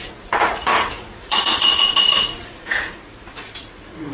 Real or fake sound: fake